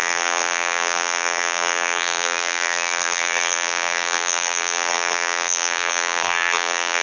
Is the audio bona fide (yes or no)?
no